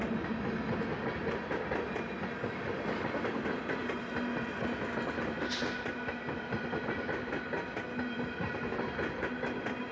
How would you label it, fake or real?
real